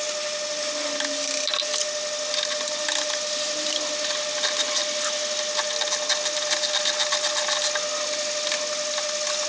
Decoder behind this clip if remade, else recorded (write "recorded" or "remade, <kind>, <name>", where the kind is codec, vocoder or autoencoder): recorded